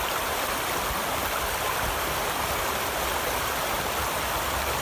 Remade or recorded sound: recorded